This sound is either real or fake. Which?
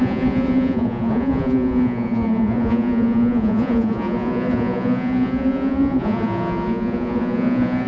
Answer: fake